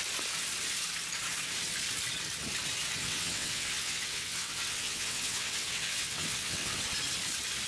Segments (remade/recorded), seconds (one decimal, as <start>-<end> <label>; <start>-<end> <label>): 0.0-3.0 recorded; 3.0-6.8 remade; 6.8-7.7 recorded